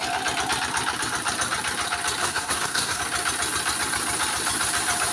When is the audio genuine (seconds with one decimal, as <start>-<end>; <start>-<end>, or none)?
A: 0.0-2.2; 3.0-5.1